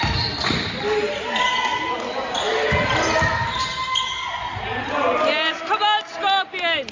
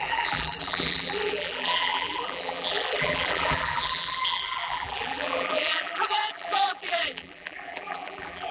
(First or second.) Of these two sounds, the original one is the first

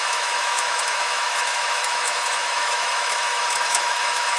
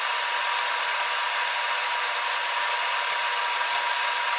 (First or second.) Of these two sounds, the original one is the second